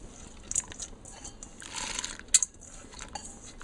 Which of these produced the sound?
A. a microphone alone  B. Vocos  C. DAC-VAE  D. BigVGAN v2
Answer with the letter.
A